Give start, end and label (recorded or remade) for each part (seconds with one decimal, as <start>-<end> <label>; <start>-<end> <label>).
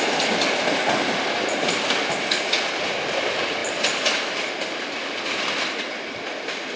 0.0-6.8 recorded